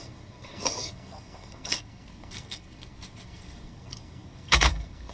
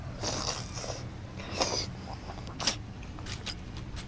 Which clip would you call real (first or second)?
second